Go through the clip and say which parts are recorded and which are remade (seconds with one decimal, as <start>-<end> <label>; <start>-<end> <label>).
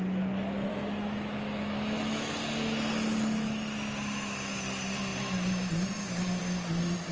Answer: 0.0-0.7 recorded; 0.7-2.3 remade; 2.3-7.1 recorded